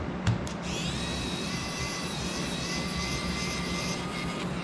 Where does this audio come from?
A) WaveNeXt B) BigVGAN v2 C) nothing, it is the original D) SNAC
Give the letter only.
B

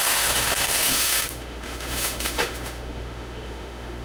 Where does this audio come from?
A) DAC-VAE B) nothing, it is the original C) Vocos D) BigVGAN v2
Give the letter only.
A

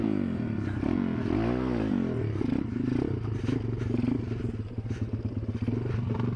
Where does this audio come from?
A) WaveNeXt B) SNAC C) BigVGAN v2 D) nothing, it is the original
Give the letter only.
D